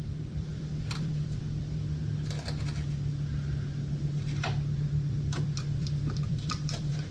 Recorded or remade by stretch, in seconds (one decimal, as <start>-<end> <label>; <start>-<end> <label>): 0.0-2.0 remade; 2.0-5.1 recorded; 5.1-7.1 remade